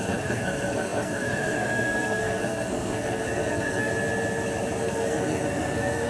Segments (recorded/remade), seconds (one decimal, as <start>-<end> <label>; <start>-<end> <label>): 0.0-3.9 remade; 3.9-4.8 recorded; 4.8-6.1 remade